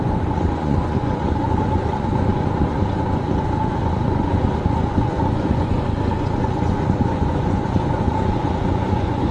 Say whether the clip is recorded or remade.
remade